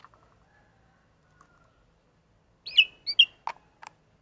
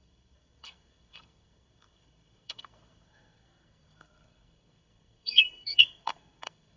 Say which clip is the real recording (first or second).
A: first